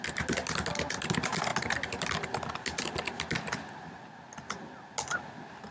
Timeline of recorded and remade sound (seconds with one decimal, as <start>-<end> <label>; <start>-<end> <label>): 0.0-5.7 recorded